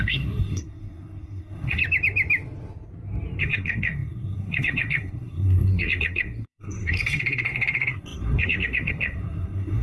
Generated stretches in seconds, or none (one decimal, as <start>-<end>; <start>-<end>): 0.0-1.8; 3.4-9.8